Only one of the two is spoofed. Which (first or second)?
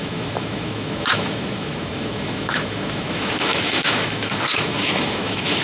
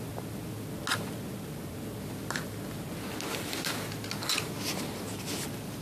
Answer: first